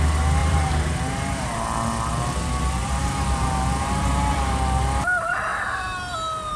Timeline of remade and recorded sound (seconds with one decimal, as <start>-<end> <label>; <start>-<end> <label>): 0.0-0.4 recorded; 0.4-0.9 remade; 0.9-2.8 recorded; 2.8-4.4 remade; 4.4-6.6 recorded